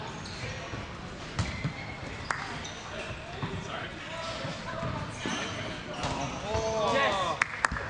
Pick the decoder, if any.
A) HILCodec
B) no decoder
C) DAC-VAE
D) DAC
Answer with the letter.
B